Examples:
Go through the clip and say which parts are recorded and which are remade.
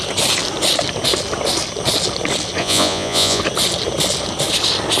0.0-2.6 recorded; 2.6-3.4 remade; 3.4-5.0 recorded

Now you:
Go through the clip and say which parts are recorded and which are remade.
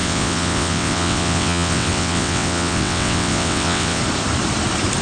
0.0-4.0 remade; 4.0-5.0 recorded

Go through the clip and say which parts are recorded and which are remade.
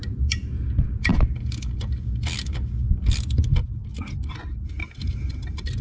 0.0-5.8 recorded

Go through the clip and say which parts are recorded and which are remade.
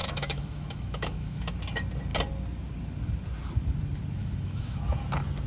0.0-1.5 remade; 1.5-4.2 recorded; 4.2-4.8 remade; 4.8-5.5 recorded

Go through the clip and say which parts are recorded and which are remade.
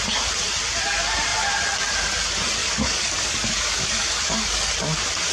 0.0-2.6 recorded; 2.6-4.7 remade; 4.7-5.3 recorded